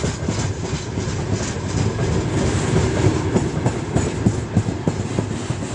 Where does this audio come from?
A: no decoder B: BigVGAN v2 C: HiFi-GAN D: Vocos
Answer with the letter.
A